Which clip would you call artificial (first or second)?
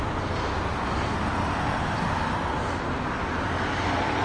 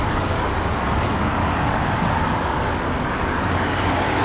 second